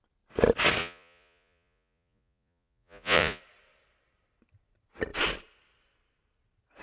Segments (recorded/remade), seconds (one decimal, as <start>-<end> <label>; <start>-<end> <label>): 0.0-0.8 recorded; 0.8-3.4 remade; 3.4-6.8 recorded